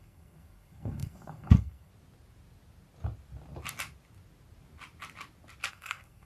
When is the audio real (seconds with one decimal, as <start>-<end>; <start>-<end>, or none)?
1.9-5.7